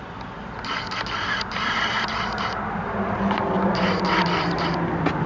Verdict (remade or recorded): recorded